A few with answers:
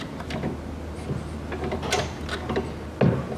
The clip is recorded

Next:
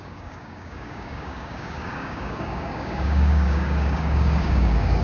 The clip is remade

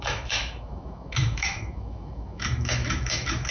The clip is remade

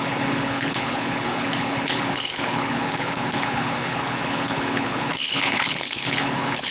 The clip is remade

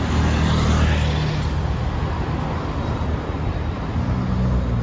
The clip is recorded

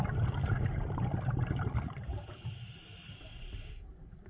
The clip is recorded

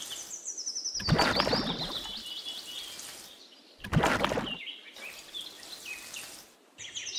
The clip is recorded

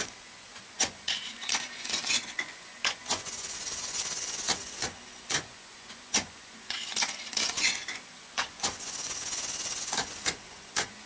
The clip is remade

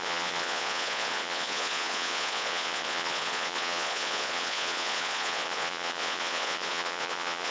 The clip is remade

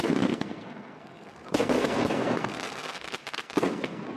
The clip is remade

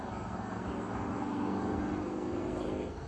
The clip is remade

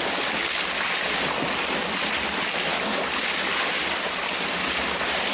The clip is recorded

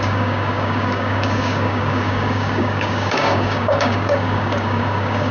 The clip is remade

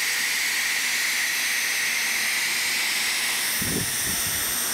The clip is recorded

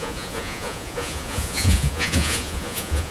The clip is remade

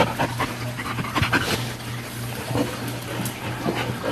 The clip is recorded